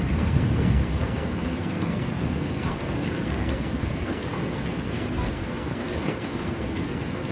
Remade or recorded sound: remade